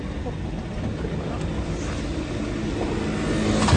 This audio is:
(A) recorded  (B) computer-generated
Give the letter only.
A